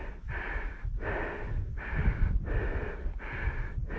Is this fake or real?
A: real